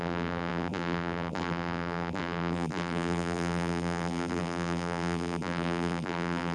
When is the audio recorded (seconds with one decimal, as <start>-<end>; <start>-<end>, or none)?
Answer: none